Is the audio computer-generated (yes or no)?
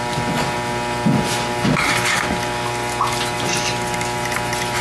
no